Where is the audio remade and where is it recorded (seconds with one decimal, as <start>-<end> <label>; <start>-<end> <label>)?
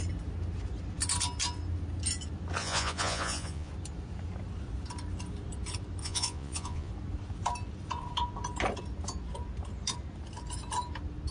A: 0.0-2.6 recorded; 2.6-3.7 remade; 3.7-6.0 recorded; 6.0-6.9 remade; 6.9-11.3 recorded